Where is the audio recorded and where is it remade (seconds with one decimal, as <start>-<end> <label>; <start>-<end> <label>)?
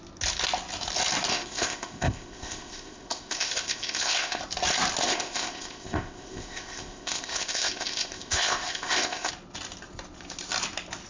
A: 0.0-1.3 recorded; 1.3-4.4 remade; 4.4-5.0 recorded; 5.0-9.3 remade; 9.3-11.1 recorded